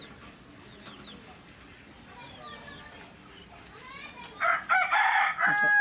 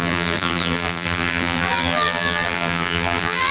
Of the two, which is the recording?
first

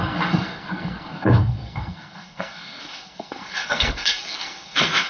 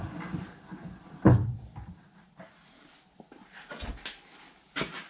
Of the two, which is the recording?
second